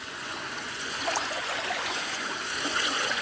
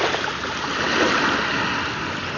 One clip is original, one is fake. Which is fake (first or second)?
first